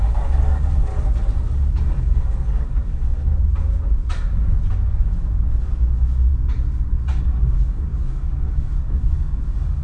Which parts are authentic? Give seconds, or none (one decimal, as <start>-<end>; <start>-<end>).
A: 0.9-2.0; 3.3-5.6; 6.3-7.2